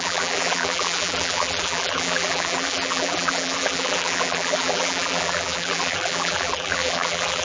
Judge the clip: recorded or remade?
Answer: remade